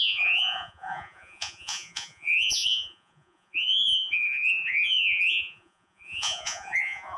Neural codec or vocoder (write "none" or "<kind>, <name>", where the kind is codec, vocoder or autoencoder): vocoder, Vocos